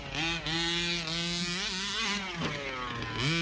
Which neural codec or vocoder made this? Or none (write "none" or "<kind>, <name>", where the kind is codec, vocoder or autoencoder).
none